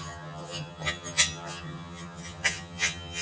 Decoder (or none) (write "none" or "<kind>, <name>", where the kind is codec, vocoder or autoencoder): vocoder, HiFi-GAN